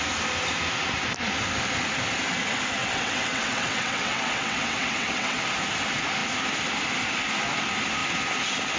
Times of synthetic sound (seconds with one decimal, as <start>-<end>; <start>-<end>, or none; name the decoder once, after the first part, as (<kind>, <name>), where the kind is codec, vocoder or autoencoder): 2.8-5.4 (vocoder, WaveNeXt)